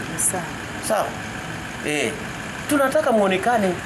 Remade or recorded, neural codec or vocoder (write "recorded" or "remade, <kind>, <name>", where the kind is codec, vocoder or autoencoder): recorded